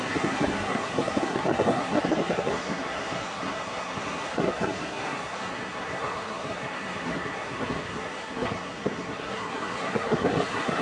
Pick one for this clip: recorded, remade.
remade